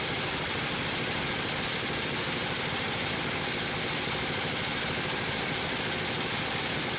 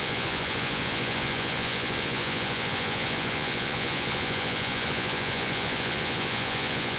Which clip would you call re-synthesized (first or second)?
second